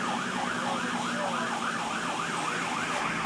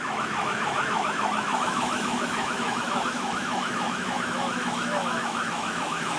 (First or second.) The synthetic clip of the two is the second